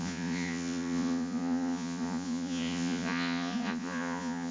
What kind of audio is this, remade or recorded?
remade